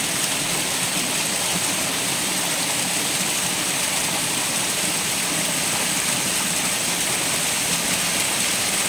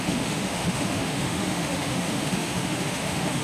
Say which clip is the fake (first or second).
second